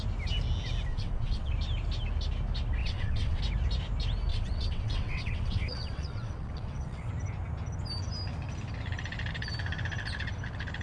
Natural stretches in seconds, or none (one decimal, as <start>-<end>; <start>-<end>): 0.0-0.9; 1.5-2.8; 3.4-4.3; 7.1-10.8